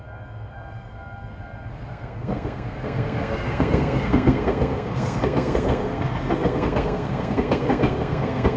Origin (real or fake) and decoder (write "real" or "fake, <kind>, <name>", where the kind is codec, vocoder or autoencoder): fake, codec, SNAC